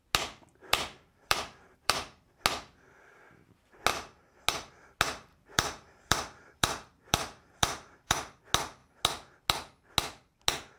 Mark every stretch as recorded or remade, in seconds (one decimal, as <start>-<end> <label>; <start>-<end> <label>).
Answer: 0.0-0.5 recorded; 0.5-2.4 remade; 2.4-5.3 recorded; 5.3-8.4 remade; 8.4-10.8 recorded